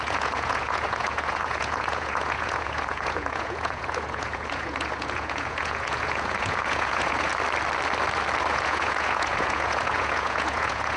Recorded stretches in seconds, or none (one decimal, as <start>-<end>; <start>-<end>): 7.3-8.5